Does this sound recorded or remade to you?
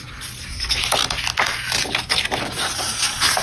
recorded